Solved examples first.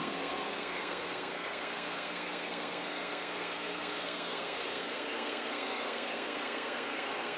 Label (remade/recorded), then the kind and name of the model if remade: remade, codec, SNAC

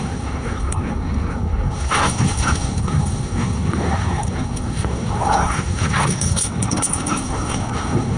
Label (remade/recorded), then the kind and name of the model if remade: remade, codec, SNAC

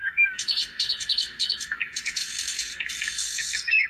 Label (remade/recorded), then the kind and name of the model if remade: remade, codec, SNAC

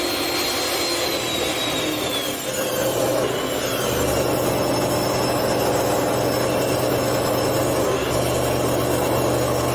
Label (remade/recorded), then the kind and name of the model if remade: recorded